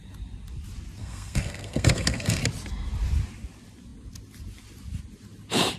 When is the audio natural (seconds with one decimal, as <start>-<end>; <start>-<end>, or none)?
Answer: 0.0-1.0; 2.4-5.8